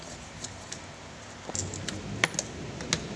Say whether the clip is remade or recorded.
recorded